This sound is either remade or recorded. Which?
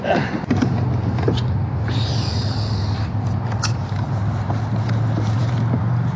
remade